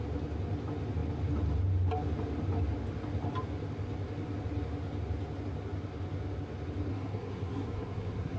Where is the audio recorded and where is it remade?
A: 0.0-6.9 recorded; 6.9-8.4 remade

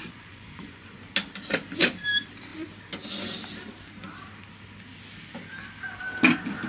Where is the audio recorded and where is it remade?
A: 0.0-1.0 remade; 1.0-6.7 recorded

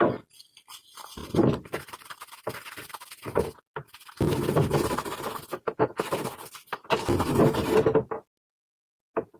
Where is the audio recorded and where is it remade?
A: 0.0-0.8 recorded; 0.8-2.1 remade; 2.1-9.4 recorded

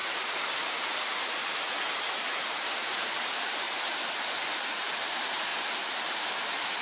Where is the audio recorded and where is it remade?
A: 0.0-4.1 remade; 4.1-5.5 recorded; 5.5-6.1 remade; 6.1-6.8 recorded

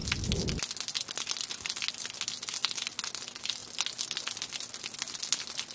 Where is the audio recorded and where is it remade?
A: 0.0-5.7 recorded

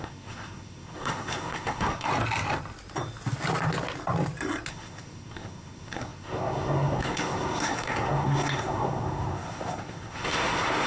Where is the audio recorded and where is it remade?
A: 0.0-2.1 remade; 2.1-4.7 recorded; 4.7-10.9 remade

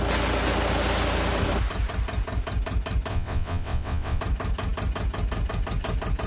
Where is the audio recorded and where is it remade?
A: 0.0-3.1 recorded; 3.1-4.2 remade; 4.2-6.3 recorded